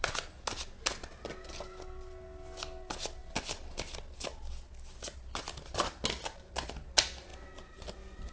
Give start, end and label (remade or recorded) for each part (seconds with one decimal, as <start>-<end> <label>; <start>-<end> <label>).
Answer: 0.0-8.3 recorded